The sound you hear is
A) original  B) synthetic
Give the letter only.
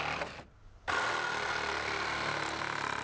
A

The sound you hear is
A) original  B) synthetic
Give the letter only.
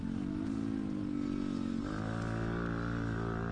A